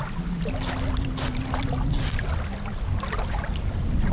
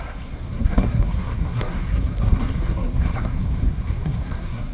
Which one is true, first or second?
first